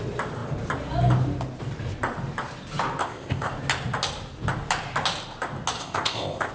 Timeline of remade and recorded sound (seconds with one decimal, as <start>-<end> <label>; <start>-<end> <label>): 0.0-3.0 recorded; 3.0-3.5 remade; 3.5-5.8 recorded; 5.8-6.5 remade